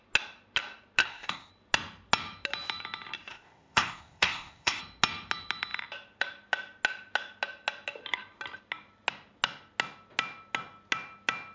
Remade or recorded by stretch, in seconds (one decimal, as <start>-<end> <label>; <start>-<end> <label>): 0.0-1.0 recorded; 1.0-1.5 remade; 1.5-3.3 recorded; 3.3-4.8 remade; 4.8-11.5 recorded